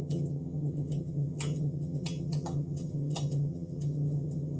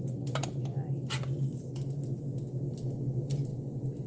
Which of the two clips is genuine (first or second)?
second